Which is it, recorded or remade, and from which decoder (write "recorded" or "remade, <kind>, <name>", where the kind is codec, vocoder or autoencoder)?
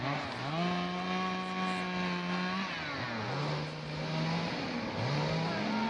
recorded